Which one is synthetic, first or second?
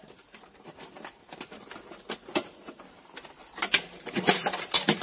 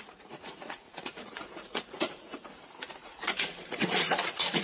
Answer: second